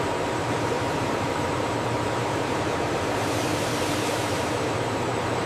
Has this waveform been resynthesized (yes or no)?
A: yes